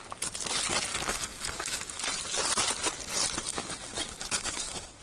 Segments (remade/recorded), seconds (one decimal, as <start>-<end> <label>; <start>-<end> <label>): 0.0-0.9 recorded; 0.9-2.0 remade; 2.0-3.5 recorded; 3.5-5.0 remade